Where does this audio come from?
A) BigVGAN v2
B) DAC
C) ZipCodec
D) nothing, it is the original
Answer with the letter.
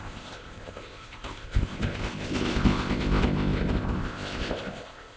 C